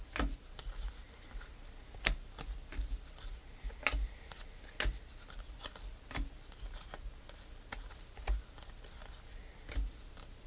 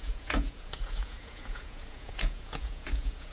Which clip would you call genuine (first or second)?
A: first